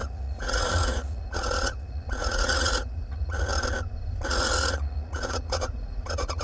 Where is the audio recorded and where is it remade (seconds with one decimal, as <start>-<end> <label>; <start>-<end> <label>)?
0.0-3.5 remade; 3.5-4.3 recorded; 4.3-6.4 remade